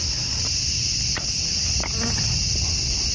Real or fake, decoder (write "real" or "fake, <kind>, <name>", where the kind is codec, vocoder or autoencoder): real